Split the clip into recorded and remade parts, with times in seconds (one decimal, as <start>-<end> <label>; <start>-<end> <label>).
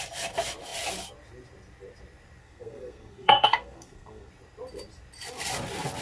0.0-2.4 recorded; 2.4-4.3 remade; 4.3-6.0 recorded